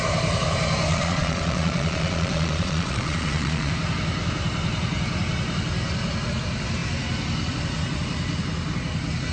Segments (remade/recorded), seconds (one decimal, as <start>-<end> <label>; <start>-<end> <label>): 0.0-0.9 recorded; 0.9-3.7 remade; 3.7-9.3 recorded

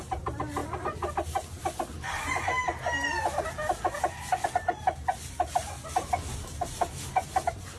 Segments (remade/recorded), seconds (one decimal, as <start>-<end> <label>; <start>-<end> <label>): 0.0-2.5 remade; 2.5-5.9 recorded; 5.9-7.8 remade

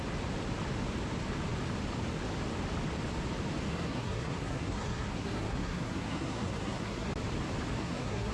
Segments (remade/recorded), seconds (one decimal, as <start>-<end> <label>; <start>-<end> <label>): 0.0-3.7 recorded; 3.7-7.1 remade; 7.1-7.8 recorded; 7.8-8.3 remade

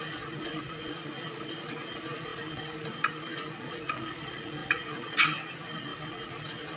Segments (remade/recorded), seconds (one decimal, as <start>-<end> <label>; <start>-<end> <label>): 0.0-6.8 remade

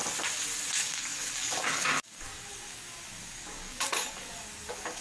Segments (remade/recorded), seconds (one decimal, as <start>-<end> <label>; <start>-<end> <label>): 0.0-0.7 recorded; 0.7-5.0 remade

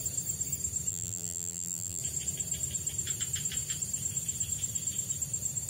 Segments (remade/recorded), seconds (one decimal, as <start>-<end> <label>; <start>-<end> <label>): 0.0-0.9 recorded; 0.9-2.0 remade; 2.0-5.7 recorded

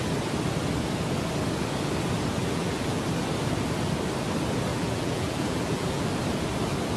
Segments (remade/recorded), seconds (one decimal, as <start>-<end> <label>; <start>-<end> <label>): 0.0-2.4 recorded; 2.4-3.0 remade; 3.0-4.7 recorded; 4.7-6.1 remade; 6.1-7.0 recorded

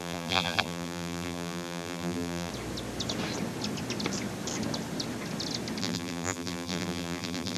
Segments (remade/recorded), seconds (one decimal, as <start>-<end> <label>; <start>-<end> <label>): 0.0-2.5 remade; 2.5-5.8 recorded; 5.8-7.6 remade